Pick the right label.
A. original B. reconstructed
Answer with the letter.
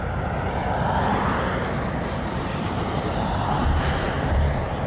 A